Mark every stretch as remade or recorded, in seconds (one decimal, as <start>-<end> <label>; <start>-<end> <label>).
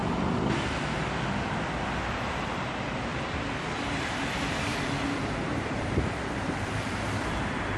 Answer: 0.0-2.1 recorded; 2.1-3.1 remade; 3.1-3.9 recorded; 3.9-7.8 remade